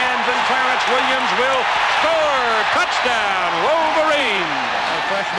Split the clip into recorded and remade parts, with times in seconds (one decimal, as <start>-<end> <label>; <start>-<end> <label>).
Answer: 0.0-1.0 remade; 1.0-4.2 recorded; 4.2-5.4 remade

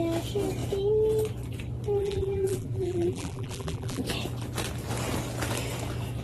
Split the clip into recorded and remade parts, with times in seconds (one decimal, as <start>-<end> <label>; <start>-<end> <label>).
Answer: 0.0-2.0 recorded; 2.0-4.0 remade; 4.0-6.2 recorded